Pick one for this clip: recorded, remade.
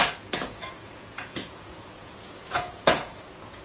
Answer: remade